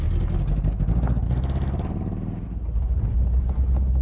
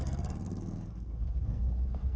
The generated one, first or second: second